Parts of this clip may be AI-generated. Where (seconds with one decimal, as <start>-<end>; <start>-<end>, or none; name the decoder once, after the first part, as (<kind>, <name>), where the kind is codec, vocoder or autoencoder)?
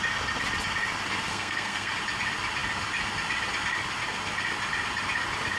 1.3-1.9 (codec, SNAC)